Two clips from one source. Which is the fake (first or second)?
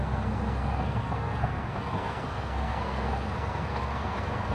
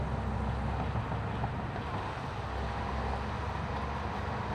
first